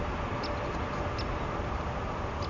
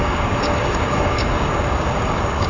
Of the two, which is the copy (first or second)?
second